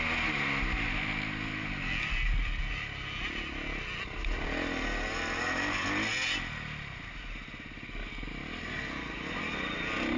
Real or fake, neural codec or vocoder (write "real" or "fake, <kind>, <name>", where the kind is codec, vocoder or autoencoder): real